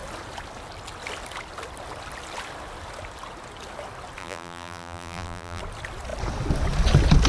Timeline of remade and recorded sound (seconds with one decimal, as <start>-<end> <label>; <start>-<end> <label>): 0.0-4.2 recorded; 4.2-5.6 remade; 5.6-7.3 recorded